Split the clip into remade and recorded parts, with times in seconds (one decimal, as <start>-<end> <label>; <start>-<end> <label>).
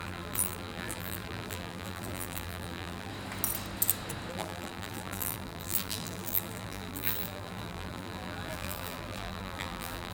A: 0.0-3.1 remade; 3.1-4.3 recorded; 4.3-10.1 remade